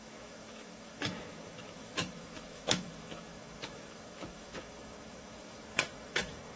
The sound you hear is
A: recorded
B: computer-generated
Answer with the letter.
B